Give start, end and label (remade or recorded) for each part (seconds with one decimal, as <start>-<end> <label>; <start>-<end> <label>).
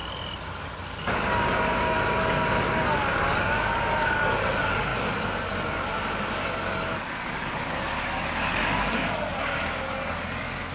0.0-0.9 recorded; 0.9-10.7 remade